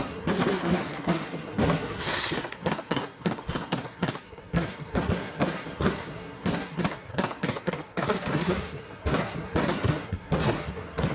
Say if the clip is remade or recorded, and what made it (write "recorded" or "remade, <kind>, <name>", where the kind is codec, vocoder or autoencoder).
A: remade, codec, SNAC